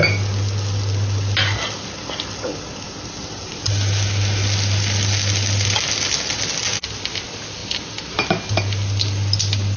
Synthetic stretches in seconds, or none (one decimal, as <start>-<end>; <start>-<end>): none